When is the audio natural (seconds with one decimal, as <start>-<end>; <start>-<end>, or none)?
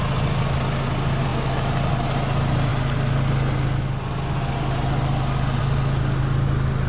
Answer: 0.0-6.9